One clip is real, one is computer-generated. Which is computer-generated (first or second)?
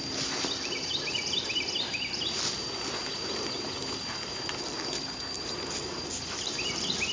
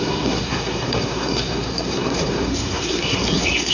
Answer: second